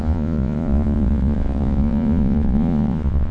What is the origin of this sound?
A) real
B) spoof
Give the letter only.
B